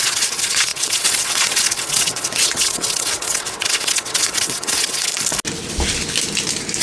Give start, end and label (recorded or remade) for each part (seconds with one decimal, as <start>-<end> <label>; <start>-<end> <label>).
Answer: 0.0-5.1 remade; 5.1-6.8 recorded